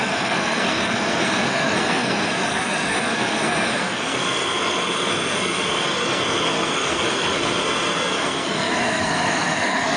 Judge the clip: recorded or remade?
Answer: remade